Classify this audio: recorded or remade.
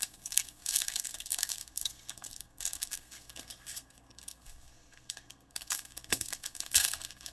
remade